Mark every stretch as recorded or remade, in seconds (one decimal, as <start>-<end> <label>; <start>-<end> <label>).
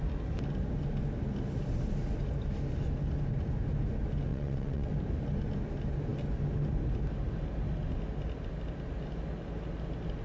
0.0-4.3 recorded; 4.3-4.9 remade; 4.9-10.2 recorded